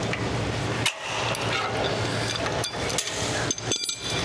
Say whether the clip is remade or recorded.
recorded